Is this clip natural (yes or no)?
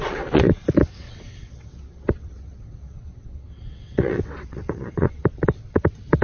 no